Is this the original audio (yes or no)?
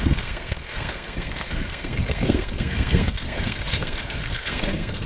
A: no